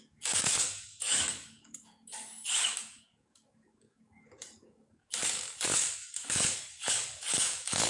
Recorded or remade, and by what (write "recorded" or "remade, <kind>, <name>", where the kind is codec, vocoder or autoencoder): remade, codec, DAC